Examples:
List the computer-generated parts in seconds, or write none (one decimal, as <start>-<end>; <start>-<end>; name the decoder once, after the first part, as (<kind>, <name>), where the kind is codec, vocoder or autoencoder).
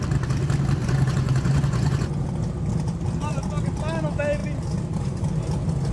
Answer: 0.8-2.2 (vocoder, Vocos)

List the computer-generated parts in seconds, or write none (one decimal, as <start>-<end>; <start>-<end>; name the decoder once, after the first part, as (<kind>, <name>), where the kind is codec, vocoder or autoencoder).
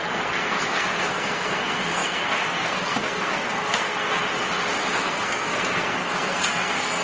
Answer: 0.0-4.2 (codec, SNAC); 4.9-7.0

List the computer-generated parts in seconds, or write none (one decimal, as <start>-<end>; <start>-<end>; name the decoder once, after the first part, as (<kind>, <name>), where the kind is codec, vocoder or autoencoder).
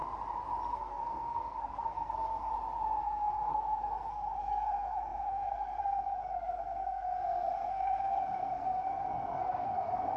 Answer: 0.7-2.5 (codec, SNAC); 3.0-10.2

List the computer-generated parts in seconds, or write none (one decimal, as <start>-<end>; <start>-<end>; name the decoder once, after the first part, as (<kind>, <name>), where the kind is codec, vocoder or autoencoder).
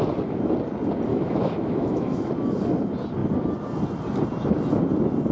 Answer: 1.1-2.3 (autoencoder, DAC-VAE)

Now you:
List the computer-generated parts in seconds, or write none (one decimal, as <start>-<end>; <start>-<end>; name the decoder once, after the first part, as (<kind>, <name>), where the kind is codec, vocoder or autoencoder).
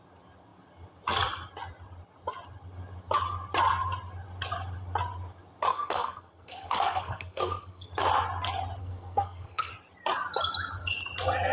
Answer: 5.7-7.9 (codec, SNAC); 8.8-9.7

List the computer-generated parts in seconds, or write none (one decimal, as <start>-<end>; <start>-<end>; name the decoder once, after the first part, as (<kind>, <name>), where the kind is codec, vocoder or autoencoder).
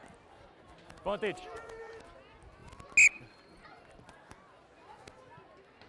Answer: none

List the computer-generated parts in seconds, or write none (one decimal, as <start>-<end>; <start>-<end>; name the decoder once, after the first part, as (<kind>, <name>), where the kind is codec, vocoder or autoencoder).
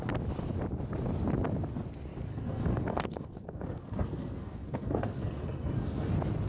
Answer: 2.3-6.1 (codec, SNAC)